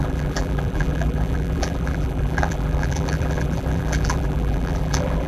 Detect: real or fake fake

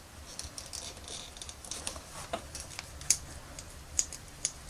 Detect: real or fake fake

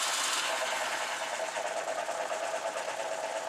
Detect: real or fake real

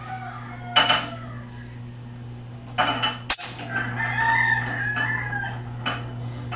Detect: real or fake real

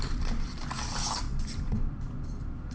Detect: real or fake fake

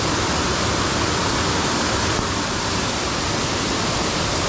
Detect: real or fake real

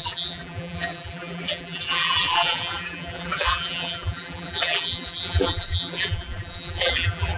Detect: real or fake fake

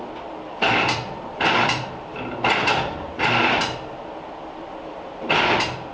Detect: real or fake fake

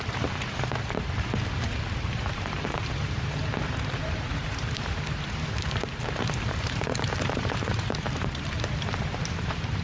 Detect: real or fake fake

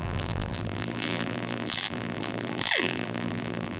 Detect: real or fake fake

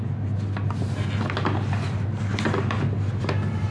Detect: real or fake real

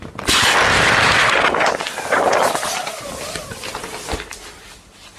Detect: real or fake real